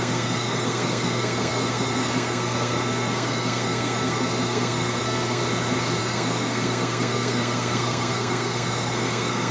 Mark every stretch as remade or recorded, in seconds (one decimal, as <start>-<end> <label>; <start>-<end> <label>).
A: 0.0-5.4 remade; 5.4-6.0 recorded; 6.0-9.5 remade